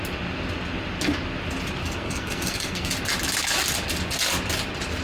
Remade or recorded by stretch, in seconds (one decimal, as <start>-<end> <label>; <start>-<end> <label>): 0.0-1.8 recorded; 1.8-2.9 remade; 2.9-5.0 recorded

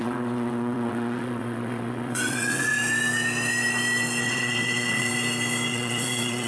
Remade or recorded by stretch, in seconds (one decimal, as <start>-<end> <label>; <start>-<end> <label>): 0.0-2.7 remade; 2.7-4.2 recorded; 4.2-5.1 remade; 5.1-5.7 recorded; 5.7-6.5 remade

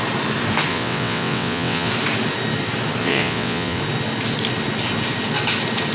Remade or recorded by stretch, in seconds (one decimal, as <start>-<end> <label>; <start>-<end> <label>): 0.0-0.7 recorded; 0.7-1.9 remade; 1.9-3.0 recorded; 3.0-3.8 remade; 3.8-5.9 recorded